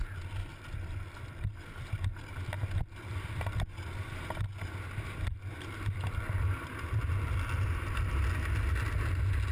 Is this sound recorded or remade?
recorded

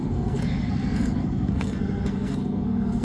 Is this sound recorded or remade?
remade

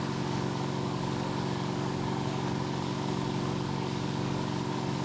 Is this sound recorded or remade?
remade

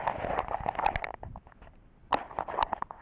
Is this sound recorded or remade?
recorded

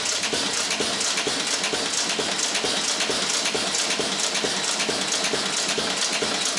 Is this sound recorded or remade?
recorded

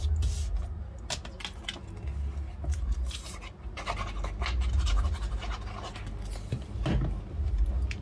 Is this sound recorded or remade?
recorded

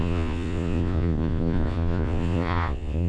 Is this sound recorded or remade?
remade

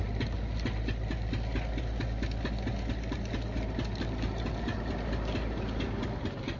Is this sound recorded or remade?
recorded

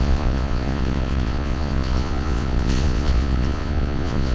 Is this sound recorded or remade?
remade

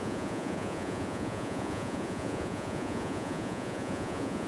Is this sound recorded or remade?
remade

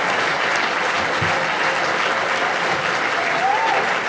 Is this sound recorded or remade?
recorded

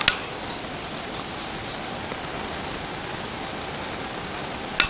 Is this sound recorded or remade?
recorded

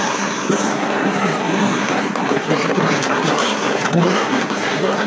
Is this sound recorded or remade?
remade